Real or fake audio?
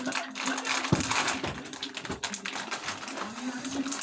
real